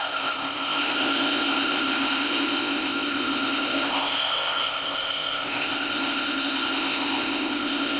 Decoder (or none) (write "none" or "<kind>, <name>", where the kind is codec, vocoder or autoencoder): codec, ZipCodec